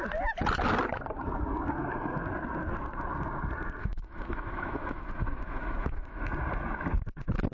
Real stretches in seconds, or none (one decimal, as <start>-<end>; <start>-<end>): 0.0-3.8; 6.2-7.5